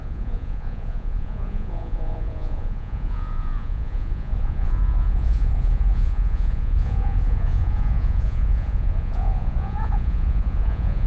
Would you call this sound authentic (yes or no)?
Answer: no